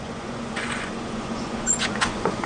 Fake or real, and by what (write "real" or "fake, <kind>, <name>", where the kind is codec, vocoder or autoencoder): fake, vocoder, Vocos